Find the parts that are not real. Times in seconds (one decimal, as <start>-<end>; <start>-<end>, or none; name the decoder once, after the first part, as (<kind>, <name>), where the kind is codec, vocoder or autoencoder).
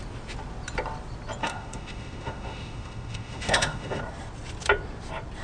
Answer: 1.4-4.0 (autoencoder, DAC-VAE)